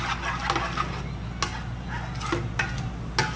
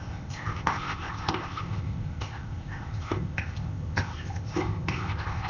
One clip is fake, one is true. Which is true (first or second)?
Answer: first